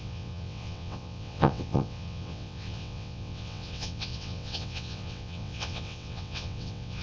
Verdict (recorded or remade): remade